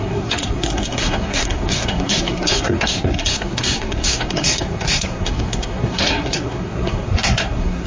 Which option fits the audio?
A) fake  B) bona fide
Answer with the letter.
A